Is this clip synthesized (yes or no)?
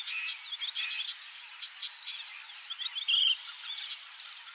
no